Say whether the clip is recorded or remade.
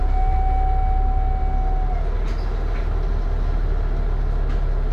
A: recorded